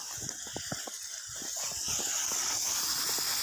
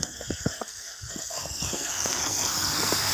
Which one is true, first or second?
first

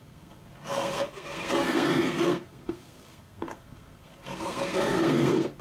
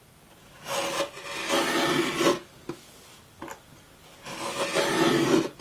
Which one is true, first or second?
second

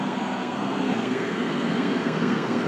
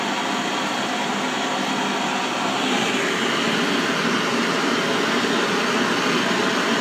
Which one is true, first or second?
second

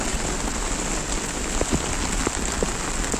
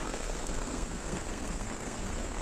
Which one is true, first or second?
first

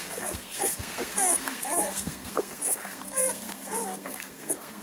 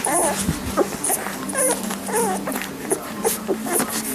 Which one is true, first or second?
second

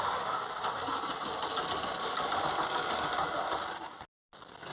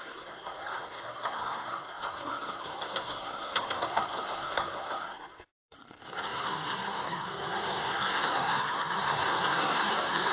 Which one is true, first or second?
first